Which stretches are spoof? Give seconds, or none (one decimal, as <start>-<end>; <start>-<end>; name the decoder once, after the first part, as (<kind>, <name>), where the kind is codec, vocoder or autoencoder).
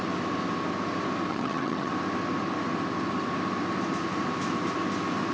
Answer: 1.3-1.9 (vocoder, HiFi-GAN)